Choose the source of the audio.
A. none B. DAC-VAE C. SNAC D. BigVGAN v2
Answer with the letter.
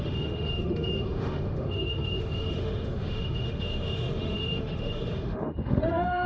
B